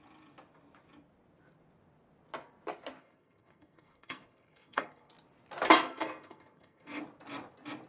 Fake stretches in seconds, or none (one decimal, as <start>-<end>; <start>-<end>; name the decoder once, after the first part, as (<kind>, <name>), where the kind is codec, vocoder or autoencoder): 3.0-5.1 (codec, SNAC); 5.8-7.0

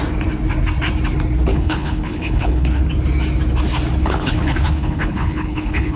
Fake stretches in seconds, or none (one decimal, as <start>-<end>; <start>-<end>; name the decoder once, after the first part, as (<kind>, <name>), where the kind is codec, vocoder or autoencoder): 1.5-2.8 (codec, HILCodec); 4.0-6.0